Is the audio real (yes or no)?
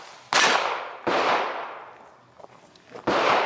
yes